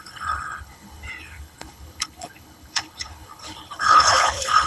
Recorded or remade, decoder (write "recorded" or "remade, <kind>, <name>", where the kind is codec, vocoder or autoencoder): remade, codec, HILCodec